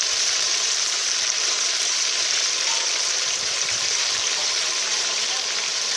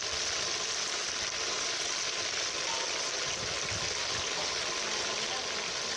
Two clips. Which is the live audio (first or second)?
second